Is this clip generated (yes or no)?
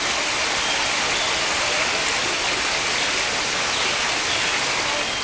no